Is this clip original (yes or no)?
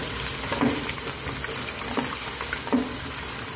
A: yes